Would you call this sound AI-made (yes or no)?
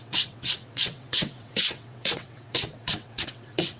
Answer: yes